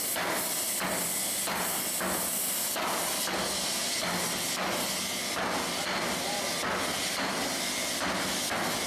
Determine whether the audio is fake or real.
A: real